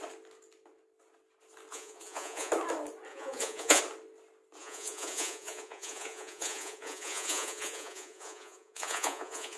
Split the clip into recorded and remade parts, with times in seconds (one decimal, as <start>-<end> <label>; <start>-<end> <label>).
0.0-1.7 recorded; 1.7-2.5 remade; 2.5-3.1 recorded; 3.1-3.8 remade; 3.8-4.6 recorded; 4.6-9.6 remade

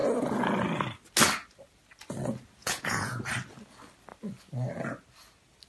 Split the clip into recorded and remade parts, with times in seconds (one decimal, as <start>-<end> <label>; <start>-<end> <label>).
0.0-2.6 recorded; 2.6-3.2 remade; 3.2-5.7 recorded